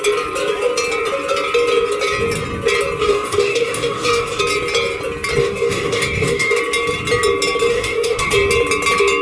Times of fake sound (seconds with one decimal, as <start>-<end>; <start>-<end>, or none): 3.0-4.4; 5.4-6.6; 7.7-8.3